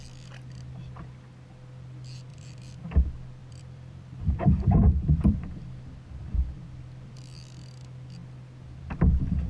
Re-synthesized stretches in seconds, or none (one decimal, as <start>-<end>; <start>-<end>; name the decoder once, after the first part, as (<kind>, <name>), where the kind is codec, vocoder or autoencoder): 2.3-2.8 (vocoder, BigVGAN v2); 3.4-7.2